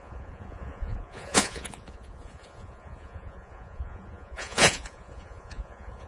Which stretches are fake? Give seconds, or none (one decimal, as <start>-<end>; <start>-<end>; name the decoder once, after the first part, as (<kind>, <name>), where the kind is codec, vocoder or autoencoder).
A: 0.0-6.1 (vocoder, Vocos)